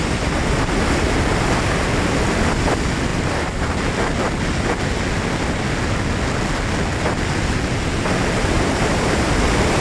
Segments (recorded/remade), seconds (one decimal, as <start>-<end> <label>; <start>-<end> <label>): 0.0-9.8 recorded